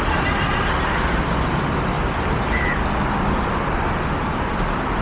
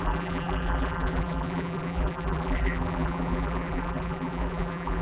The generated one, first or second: second